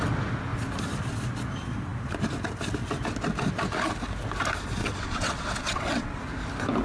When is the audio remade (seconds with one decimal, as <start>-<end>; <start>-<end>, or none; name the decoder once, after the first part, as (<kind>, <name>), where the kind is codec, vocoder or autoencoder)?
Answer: 4.8-6.2 (vocoder, WaveNeXt)